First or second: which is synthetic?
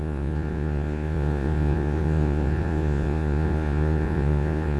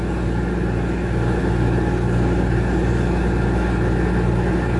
first